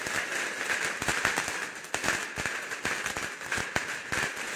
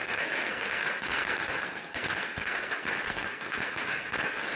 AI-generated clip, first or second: second